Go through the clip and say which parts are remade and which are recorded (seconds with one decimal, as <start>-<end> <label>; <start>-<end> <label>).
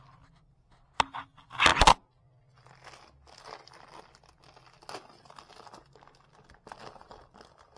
0.0-7.8 recorded